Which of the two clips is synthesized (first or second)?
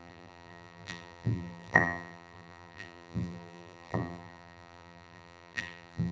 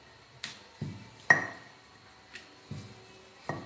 first